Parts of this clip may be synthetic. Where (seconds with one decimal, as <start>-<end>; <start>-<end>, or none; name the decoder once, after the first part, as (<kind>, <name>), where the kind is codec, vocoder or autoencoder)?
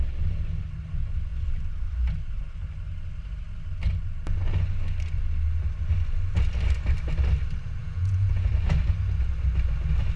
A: 7.8-8.5 (vocoder, Vocos)